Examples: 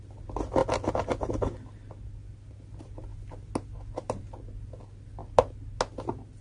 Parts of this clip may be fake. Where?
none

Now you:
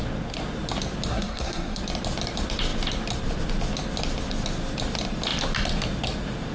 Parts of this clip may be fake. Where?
1.1-1.8 (codec, SNAC)

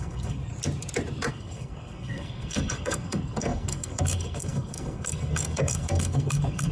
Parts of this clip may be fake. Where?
0.0-0.4 (codec, SNAC); 1.3-6.7